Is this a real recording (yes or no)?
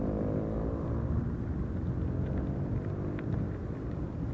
yes